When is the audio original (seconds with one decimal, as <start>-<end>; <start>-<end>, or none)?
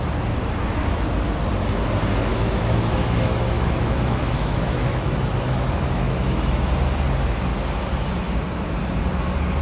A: 0.0-2.3; 6.7-9.6